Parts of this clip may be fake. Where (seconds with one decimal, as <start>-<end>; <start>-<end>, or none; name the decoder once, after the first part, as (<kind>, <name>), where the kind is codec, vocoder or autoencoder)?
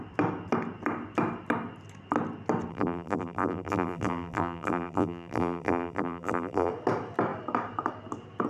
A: 2.7-6.7 (vocoder, BigVGAN v2)